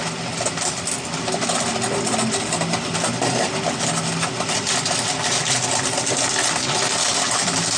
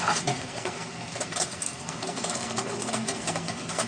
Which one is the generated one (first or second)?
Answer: second